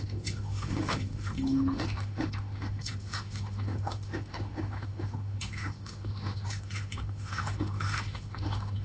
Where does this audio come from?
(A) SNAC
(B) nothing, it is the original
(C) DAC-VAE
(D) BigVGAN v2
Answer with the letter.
C